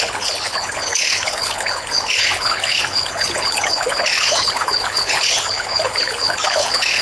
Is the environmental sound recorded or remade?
remade